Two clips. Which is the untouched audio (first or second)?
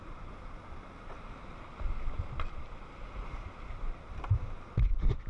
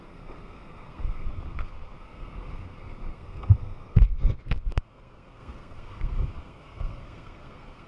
first